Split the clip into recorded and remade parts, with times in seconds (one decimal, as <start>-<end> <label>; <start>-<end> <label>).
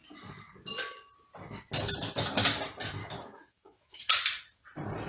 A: 0.0-3.0 recorded; 3.0-4.0 remade; 4.0-5.1 recorded